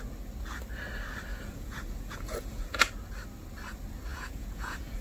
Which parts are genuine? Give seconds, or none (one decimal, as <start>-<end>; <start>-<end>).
0.0-1.3; 2.9-4.1